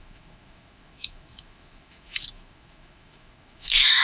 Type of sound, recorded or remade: remade